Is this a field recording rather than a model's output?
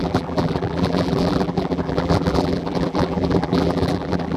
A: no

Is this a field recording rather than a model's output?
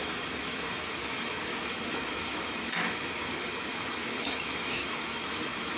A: no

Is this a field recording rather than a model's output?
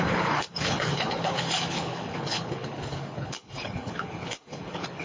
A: no